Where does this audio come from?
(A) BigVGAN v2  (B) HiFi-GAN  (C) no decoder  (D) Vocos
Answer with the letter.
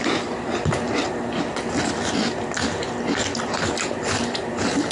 A